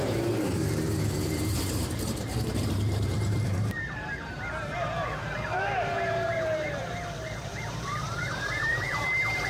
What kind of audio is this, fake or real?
fake